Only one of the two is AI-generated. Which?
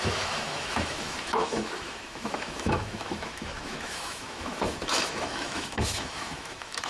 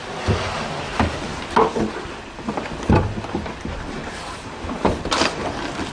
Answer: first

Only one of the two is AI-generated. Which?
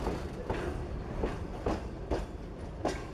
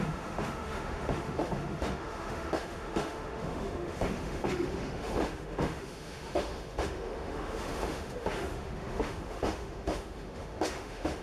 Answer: second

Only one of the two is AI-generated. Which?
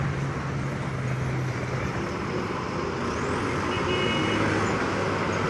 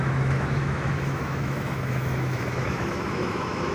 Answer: second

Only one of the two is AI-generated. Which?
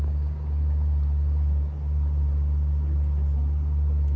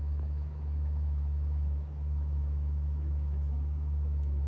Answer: second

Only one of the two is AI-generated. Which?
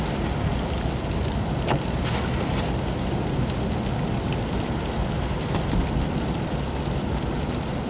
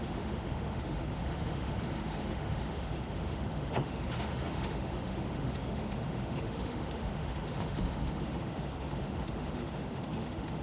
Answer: second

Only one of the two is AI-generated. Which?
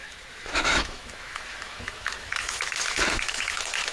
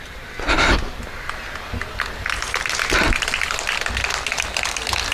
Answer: first